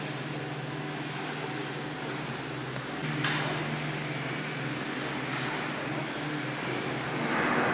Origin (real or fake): real